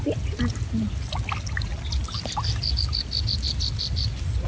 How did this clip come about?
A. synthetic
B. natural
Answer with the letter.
B